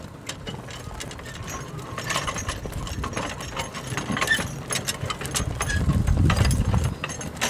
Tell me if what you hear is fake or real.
real